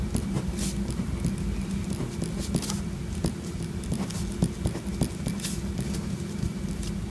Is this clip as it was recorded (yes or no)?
yes